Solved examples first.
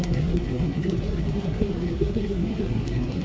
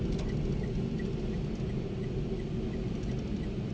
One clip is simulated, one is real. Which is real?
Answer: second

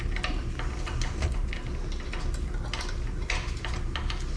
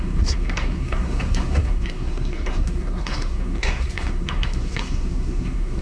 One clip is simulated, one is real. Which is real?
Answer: first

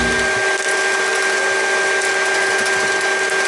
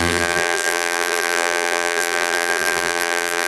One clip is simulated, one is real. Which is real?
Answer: first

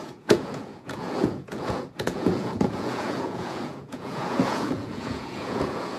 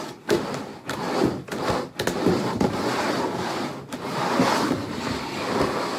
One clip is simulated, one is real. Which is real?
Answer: second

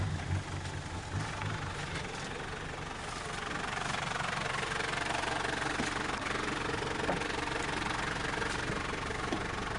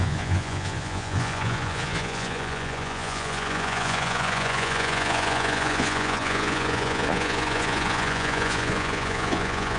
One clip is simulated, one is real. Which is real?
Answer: first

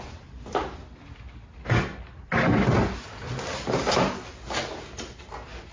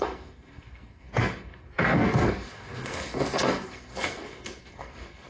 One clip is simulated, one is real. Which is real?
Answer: first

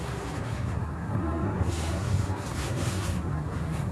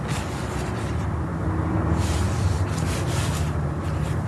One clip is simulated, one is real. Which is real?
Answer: second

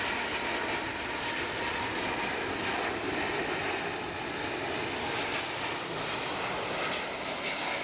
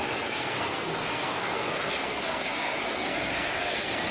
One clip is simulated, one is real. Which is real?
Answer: first